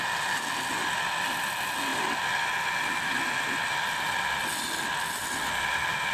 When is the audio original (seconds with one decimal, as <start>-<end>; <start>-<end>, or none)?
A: 0.0-6.1